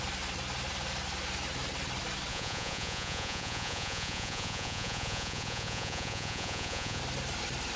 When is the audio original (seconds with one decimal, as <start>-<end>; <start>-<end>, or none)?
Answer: 0.0-2.3; 7.0-7.8